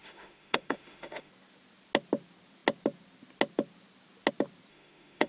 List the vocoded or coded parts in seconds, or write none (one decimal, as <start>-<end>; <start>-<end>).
0.0-1.3; 4.7-5.3